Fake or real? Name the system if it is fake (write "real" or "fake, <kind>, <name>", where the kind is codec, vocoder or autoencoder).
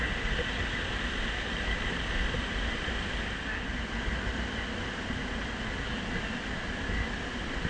real